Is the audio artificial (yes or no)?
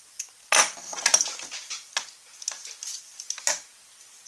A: no